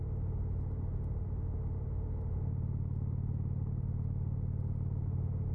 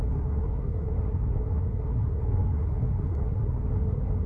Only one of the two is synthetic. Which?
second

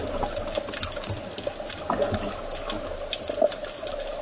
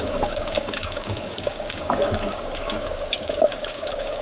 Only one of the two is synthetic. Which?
second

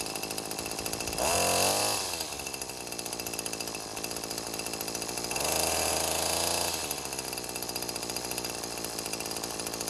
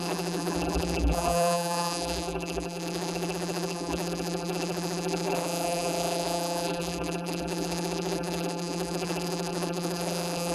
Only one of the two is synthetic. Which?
second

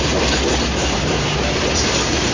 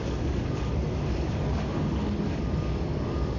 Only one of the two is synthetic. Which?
second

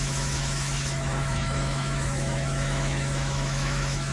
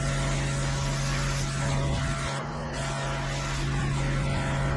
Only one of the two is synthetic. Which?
first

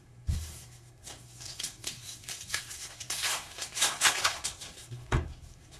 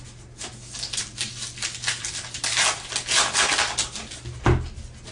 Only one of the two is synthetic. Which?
first